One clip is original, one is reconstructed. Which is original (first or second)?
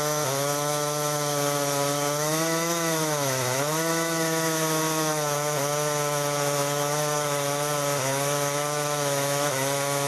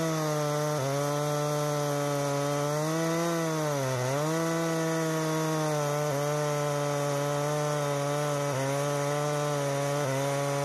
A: second